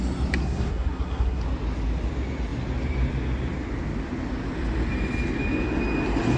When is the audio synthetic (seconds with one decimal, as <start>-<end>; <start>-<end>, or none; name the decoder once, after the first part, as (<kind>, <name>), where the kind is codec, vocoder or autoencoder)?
0.4-1.4 (codec, SNAC)